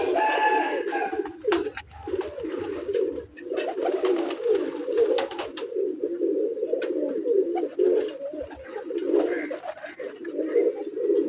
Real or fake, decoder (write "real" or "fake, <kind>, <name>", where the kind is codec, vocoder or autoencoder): real